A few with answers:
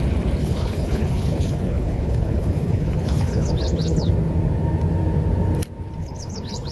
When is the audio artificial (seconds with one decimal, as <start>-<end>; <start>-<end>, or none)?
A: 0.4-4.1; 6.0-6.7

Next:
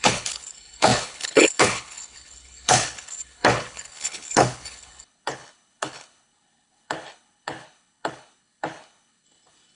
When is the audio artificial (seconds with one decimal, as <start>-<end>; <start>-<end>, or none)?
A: 0.0-9.8

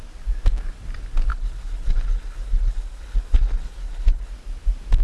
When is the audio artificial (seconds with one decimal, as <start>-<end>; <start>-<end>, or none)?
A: 1.3-4.3